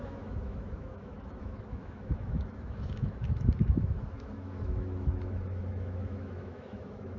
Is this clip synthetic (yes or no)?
yes